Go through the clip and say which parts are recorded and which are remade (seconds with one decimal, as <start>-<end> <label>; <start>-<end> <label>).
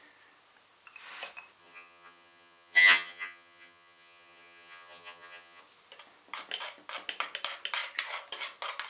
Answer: 0.0-1.6 recorded; 1.6-5.6 remade; 5.6-8.9 recorded